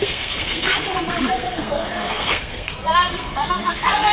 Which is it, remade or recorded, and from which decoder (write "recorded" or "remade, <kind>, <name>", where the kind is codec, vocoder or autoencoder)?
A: remade, codec, SNAC